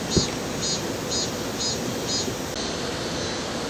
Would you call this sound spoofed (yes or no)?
no